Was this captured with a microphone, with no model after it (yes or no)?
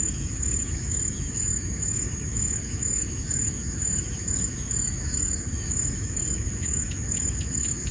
no